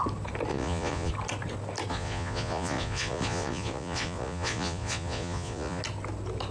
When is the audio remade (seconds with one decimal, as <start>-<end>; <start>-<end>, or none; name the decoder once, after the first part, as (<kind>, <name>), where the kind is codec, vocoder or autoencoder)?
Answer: 0.5-1.1 (vocoder, Vocos); 1.9-5.8